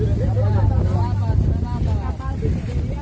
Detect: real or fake real